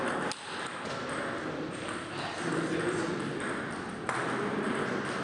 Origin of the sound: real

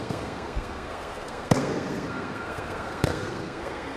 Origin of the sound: fake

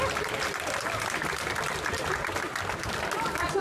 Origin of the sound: real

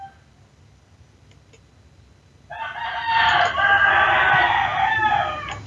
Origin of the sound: real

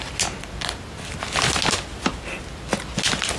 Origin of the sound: real